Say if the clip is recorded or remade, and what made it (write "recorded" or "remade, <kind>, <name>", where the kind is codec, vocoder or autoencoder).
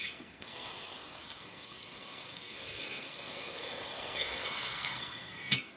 remade, codec, SNAC